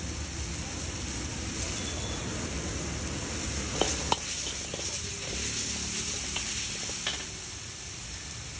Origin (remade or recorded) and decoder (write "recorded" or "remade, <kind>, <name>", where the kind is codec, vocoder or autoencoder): recorded